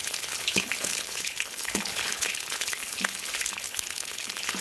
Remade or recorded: remade